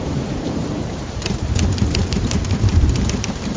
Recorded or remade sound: remade